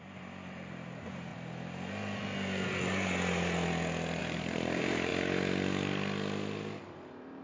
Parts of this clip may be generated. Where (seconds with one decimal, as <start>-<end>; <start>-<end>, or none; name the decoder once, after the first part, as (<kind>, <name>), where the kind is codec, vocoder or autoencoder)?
0.0-1.3 (vocoder, BigVGAN v2); 4.2-5.1; 6.8-7.4